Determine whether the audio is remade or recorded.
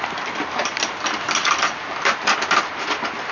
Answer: recorded